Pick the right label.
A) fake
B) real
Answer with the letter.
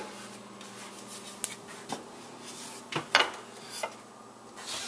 B